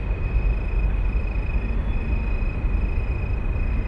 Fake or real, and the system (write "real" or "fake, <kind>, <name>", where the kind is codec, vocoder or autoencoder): real